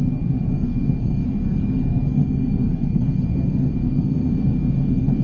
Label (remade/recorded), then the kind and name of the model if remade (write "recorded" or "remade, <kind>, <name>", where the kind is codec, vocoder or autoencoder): remade, codec, SNAC